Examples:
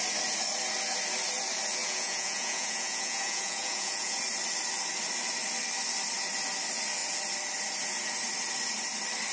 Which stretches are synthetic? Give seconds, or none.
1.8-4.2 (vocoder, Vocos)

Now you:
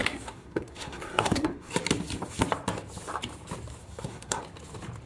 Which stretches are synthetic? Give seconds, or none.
0.0-1.7 (codec, SNAC); 3.8-4.4

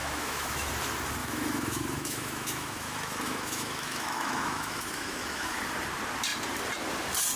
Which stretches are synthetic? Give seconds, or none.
0.0-0.7 (autoencoder, DAC-VAE); 1.2-5.6

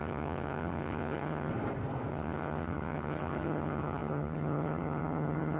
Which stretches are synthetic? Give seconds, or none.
0.0-1.5 (vocoder, HiFi-GAN); 2.1-5.6